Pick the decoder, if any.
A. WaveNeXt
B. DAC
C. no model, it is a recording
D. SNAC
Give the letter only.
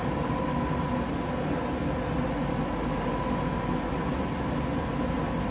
C